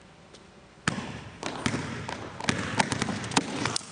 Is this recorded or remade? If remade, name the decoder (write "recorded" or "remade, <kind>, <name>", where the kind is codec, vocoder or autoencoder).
recorded